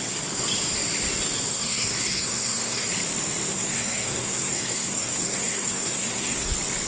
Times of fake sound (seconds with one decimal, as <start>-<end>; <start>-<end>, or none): 1.5-2.9; 3.5-6.5